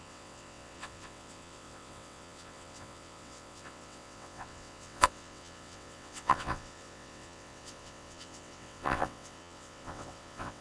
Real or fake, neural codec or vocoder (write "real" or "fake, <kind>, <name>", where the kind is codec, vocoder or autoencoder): fake, vocoder, WaveNeXt